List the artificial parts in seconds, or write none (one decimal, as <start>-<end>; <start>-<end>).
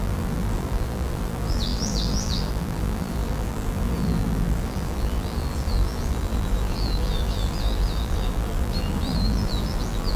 0.0-10.2